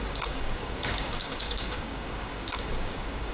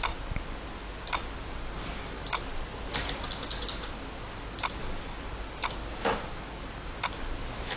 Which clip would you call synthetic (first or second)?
first